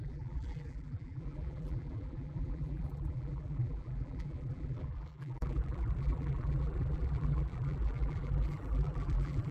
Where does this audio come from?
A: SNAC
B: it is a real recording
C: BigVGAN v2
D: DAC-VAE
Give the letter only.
C